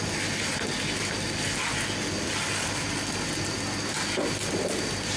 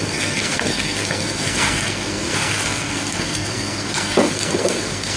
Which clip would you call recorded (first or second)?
first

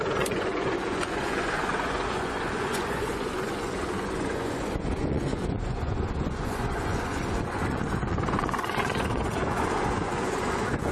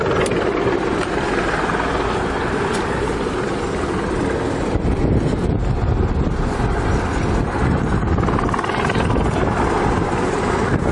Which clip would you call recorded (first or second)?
second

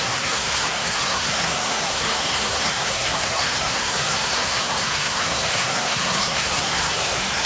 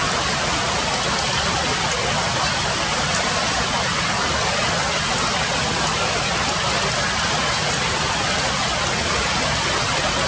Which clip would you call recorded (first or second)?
second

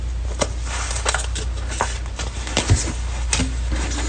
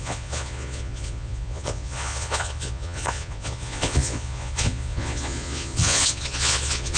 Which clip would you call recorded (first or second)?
first